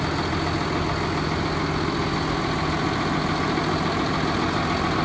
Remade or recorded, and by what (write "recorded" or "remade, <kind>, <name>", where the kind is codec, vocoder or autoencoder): recorded